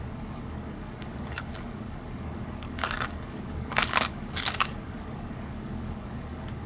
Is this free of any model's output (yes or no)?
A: no